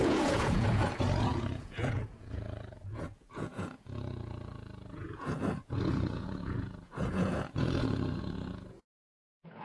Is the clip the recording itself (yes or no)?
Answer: no